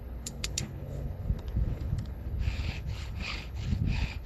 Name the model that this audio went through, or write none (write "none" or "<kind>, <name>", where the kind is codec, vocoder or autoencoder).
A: codec, HILCodec